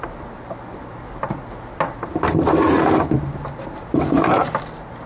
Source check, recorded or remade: recorded